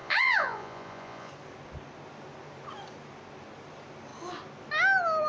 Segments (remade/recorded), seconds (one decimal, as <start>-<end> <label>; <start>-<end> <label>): 0.0-1.3 remade; 1.3-5.3 recorded